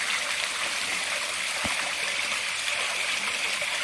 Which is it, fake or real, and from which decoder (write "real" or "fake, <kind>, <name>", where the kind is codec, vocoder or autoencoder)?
real